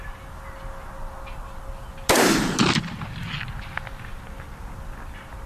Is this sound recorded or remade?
recorded